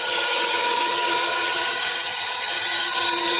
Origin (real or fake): fake